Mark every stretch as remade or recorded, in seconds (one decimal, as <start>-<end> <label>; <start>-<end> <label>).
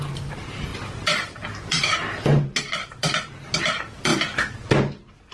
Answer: 0.0-4.1 remade; 4.1-5.3 recorded